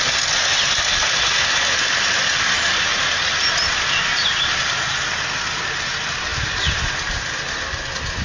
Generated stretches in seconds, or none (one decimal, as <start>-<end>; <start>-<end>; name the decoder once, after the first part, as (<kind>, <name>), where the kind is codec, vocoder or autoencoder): none